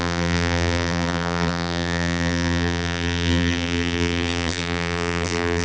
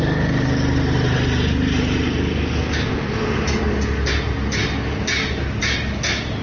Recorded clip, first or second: second